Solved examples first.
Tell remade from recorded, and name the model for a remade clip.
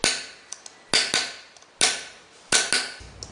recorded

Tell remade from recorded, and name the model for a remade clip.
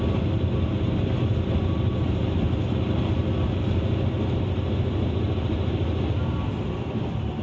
recorded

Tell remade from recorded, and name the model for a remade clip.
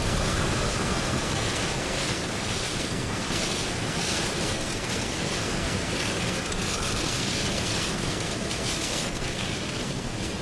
remade, codec, SNAC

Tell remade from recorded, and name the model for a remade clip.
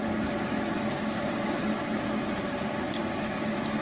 recorded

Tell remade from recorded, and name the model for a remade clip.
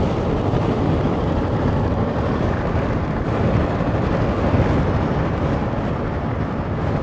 recorded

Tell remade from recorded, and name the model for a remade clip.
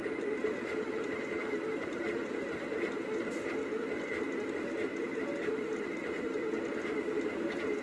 recorded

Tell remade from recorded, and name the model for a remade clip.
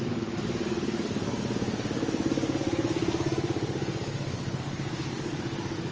remade, codec, DAC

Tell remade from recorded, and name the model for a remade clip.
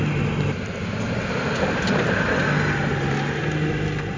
recorded